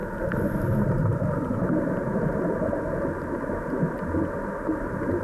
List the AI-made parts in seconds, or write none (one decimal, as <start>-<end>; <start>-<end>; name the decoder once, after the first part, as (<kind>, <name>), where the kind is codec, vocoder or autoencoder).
0.8-2.1 (vocoder, BigVGAN v2); 4.8-5.2